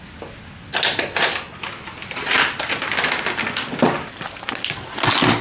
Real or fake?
real